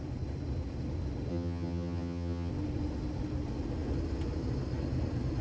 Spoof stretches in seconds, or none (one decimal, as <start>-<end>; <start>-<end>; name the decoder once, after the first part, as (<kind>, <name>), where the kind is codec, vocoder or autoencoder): 1.3-2.5 (vocoder, HiFi-GAN)